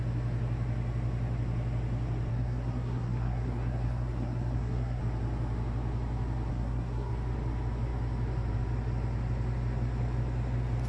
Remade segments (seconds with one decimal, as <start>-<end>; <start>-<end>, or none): 2.3-5.0; 6.5-7.1